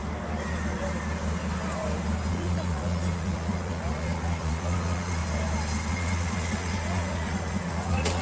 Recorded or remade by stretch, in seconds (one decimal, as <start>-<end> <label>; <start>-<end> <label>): 0.0-2.3 recorded; 2.3-5.2 remade; 5.2-5.9 recorded; 5.9-8.2 remade